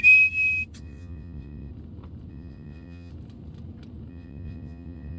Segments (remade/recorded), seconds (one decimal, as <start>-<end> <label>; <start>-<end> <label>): 0.0-0.8 recorded; 0.8-1.7 remade; 1.7-2.3 recorded; 2.3-3.1 remade; 3.1-4.1 recorded; 4.1-5.2 remade